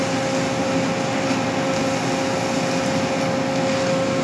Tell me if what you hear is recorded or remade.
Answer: recorded